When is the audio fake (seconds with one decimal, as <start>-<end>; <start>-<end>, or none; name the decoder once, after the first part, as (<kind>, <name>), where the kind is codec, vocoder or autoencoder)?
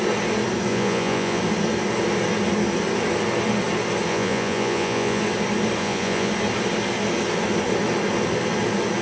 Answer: 0.7-1.4 (vocoder, Vocos); 4.1-5.2; 5.8-6.3